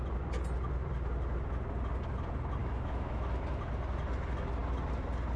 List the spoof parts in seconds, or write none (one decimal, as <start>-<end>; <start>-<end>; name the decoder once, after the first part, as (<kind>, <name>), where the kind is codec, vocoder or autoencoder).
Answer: 2.6-3.4 (autoencoder, DAC-VAE)